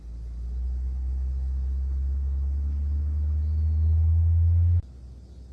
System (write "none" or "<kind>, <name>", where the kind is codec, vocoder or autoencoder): none